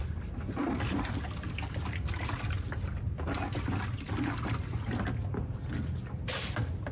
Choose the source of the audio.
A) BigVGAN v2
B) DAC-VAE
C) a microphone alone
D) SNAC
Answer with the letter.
C